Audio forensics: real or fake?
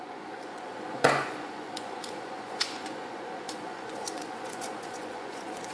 fake